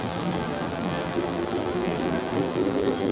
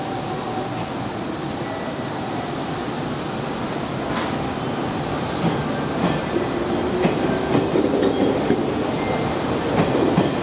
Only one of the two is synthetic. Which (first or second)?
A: first